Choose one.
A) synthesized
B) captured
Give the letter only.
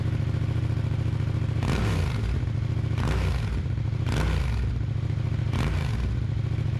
B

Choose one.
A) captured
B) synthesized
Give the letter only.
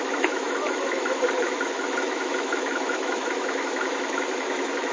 B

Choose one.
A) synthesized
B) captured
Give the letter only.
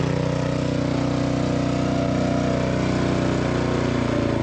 B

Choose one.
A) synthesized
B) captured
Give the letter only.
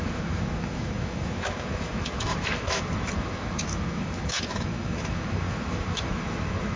A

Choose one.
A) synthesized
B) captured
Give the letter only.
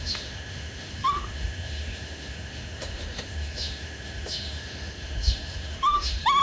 A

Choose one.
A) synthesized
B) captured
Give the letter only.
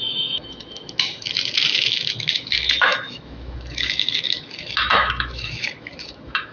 A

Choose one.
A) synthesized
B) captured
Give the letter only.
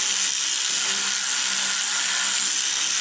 B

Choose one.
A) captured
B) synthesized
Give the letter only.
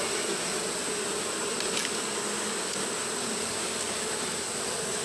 A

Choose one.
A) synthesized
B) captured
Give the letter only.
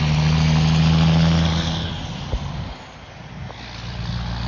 B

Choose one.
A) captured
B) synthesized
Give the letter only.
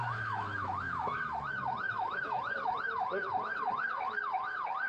B